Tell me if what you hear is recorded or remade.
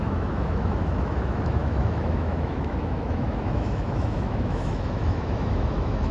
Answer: remade